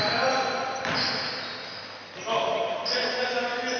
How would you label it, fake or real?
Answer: real